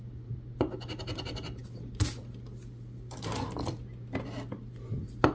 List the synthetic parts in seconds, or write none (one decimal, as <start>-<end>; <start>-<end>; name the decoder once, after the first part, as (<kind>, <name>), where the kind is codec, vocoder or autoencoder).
none